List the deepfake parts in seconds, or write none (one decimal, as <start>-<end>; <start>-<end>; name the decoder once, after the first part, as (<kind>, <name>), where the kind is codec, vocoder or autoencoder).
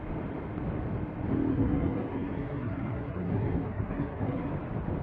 1.5-4.5 (codec, SNAC)